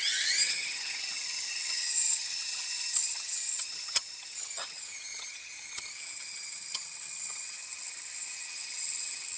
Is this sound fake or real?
fake